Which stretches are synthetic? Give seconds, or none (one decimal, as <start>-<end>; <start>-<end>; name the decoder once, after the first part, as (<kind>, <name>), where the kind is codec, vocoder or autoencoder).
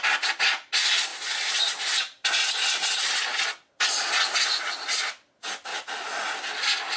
none